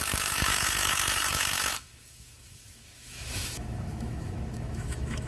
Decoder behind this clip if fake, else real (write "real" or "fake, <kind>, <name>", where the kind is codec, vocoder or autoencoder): fake, autoencoder, DAC-VAE